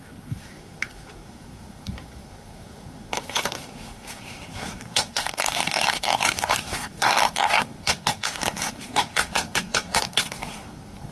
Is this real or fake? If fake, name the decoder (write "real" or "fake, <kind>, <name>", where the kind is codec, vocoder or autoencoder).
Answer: fake, codec, SNAC